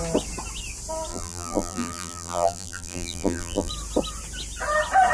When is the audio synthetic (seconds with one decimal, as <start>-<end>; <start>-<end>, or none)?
1.1-3.7